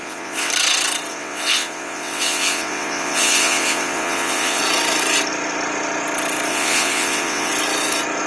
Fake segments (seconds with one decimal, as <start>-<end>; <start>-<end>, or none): 0.0-0.5; 1.1-4.6; 6.5-7.5